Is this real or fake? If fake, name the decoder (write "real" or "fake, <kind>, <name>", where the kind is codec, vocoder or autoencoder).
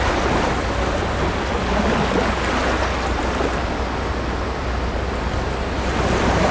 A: real